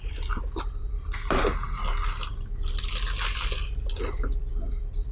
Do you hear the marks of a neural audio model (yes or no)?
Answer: no